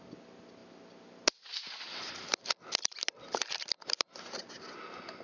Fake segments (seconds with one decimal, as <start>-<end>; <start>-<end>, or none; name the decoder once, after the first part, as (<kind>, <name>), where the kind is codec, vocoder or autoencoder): none